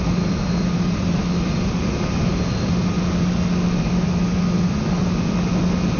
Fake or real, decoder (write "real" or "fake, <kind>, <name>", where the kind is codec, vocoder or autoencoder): real